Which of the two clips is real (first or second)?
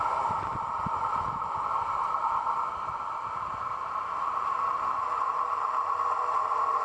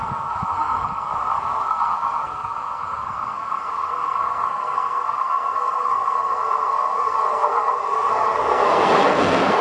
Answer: first